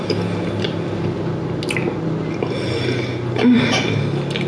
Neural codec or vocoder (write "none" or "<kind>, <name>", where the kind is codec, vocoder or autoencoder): none